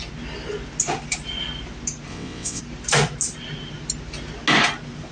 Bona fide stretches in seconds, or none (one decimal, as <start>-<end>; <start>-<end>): 0.0-2.1; 2.6-5.1